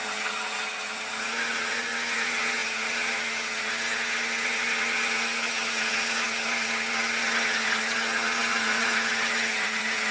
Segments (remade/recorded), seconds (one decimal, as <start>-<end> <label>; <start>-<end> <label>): 0.0-10.1 remade